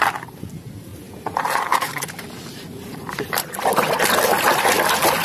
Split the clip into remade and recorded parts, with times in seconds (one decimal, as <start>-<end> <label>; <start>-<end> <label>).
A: 0.0-0.9 recorded; 0.9-4.0 remade; 4.0-5.2 recorded